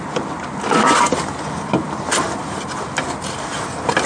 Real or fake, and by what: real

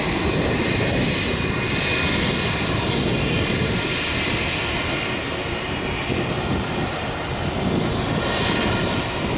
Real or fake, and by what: real